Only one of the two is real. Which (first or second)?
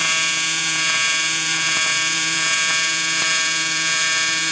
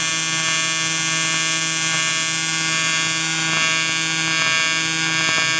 second